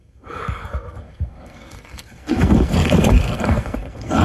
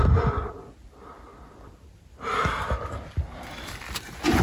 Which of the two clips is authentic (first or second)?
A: second